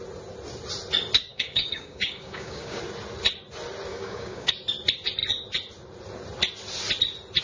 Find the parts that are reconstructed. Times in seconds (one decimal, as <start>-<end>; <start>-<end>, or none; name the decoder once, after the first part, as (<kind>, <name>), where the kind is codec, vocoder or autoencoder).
1.3-2.8 (codec, DAC); 3.9-4.5